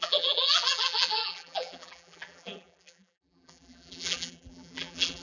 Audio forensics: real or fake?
fake